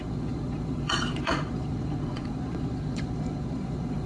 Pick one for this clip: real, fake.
fake